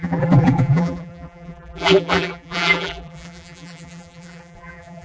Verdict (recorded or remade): remade